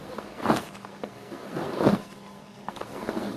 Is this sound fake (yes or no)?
yes